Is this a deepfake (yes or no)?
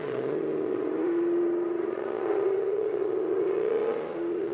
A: yes